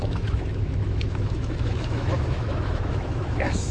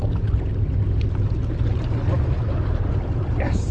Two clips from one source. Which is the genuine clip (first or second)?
second